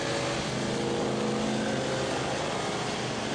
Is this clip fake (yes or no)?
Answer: no